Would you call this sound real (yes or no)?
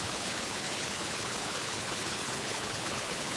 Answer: no